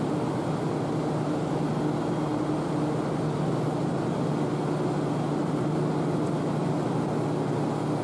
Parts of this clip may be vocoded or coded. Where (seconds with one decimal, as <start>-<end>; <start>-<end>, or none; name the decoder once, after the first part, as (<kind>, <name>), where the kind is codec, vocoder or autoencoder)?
none